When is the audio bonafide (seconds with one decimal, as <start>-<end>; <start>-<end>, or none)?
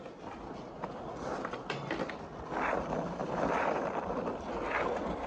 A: 0.0-3.2; 3.9-5.3